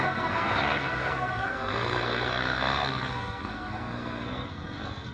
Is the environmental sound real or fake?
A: fake